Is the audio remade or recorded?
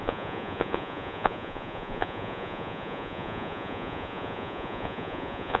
remade